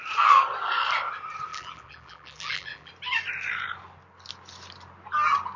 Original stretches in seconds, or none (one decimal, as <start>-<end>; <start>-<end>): 0.0-1.5; 2.9-5.6